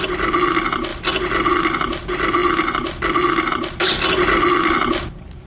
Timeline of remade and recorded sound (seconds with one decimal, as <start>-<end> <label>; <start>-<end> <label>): 0.0-5.5 recorded